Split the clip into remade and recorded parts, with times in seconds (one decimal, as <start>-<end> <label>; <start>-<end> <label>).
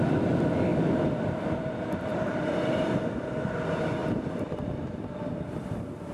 0.0-2.1 recorded; 2.1-3.6 remade; 3.6-4.0 recorded; 4.0-6.1 remade